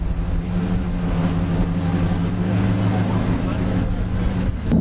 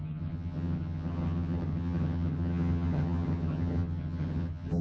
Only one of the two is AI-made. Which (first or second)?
second